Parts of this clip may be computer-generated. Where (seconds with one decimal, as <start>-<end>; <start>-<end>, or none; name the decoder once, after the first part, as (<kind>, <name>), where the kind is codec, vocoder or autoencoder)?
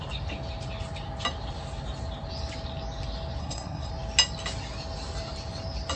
3.4-3.9 (codec, SNAC)